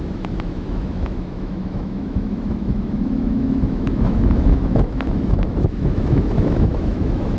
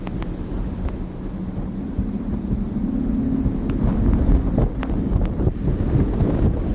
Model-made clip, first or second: first